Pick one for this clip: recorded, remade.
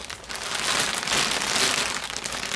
recorded